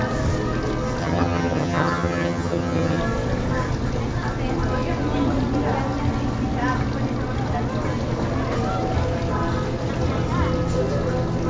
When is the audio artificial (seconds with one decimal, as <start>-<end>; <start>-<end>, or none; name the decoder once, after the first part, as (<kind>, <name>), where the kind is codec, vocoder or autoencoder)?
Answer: 1.0-3.0 (vocoder, HiFi-GAN)